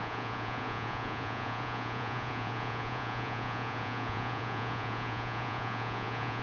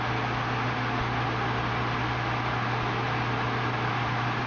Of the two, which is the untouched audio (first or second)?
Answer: second